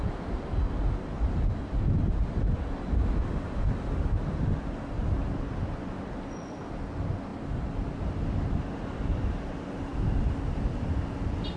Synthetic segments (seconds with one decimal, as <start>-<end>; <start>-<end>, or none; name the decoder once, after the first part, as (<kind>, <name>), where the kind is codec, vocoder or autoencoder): none